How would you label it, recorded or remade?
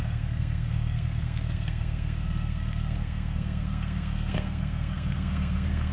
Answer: remade